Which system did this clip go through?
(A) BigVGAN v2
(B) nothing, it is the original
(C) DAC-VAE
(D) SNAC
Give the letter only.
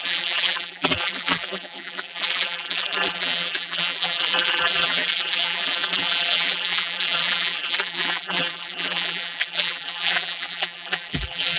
A